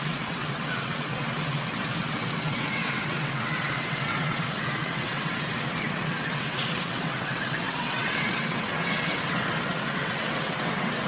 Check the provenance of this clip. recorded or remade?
remade